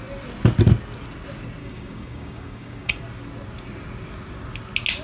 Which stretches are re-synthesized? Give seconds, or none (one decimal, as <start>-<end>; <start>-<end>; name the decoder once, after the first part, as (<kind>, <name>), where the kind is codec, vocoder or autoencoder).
1.6-3.0 (codec, DAC)